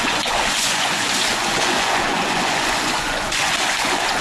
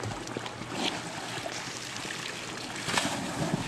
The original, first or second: second